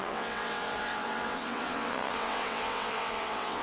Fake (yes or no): yes